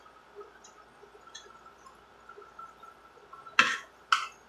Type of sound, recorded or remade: recorded